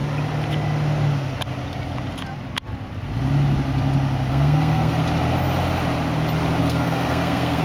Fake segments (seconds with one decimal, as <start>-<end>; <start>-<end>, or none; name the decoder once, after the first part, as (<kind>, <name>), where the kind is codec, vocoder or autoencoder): 4.3-5.0 (codec, SNAC); 6.6-7.6